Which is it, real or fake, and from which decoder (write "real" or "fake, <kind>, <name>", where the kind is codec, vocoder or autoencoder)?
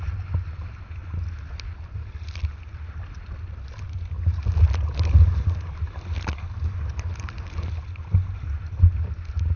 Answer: real